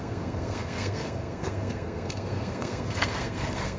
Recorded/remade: remade